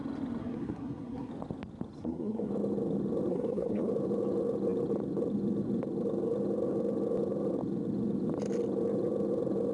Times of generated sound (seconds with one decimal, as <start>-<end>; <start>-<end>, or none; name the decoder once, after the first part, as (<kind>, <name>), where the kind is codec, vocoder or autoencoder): 0.4-1.3 (codec, SNAC); 2.0-2.5; 3.3-3.9